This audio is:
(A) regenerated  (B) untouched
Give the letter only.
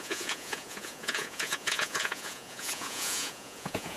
A